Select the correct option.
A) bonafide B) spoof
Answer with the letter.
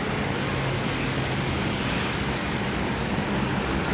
B